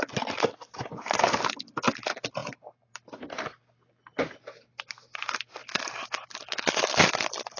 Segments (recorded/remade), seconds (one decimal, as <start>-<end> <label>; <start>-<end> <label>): 0.0-7.6 recorded